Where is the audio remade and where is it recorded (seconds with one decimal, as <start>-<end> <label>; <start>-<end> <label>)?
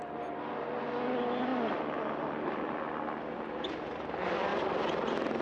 0.0-1.5 recorded; 1.5-2.0 remade; 2.0-4.5 recorded; 4.5-5.4 remade